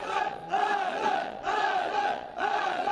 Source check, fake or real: fake